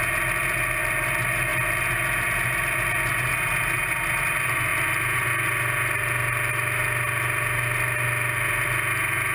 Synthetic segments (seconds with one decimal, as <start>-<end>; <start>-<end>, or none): none